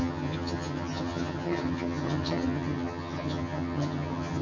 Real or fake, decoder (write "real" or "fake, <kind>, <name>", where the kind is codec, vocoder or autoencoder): fake, vocoder, HiFi-GAN